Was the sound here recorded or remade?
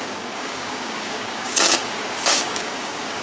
remade